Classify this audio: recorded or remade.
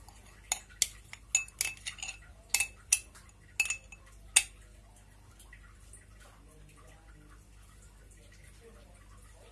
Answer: recorded